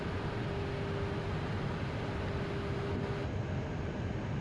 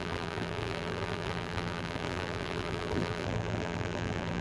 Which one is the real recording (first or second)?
first